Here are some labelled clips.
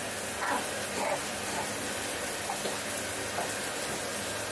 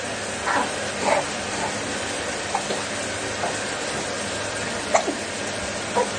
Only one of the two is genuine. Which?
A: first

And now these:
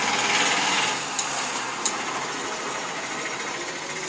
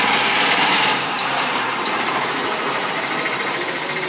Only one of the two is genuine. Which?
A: first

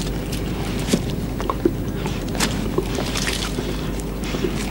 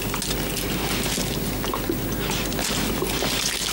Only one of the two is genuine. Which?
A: second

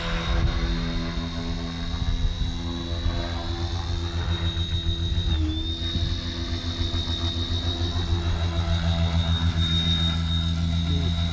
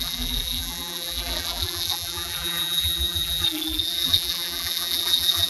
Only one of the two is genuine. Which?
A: first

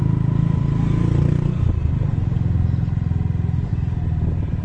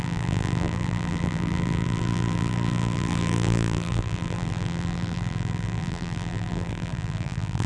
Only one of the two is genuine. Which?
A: first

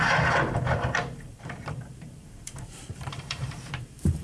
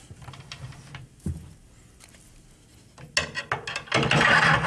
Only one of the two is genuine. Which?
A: second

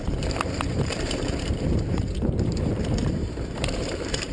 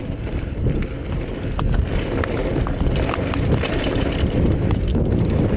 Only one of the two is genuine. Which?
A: second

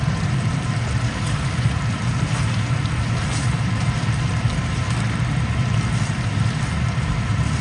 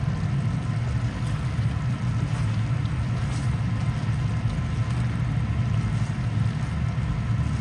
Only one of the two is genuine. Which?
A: second